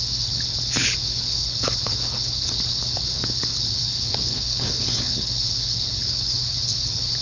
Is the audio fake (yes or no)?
yes